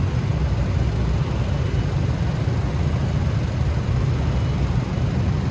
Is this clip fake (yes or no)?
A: no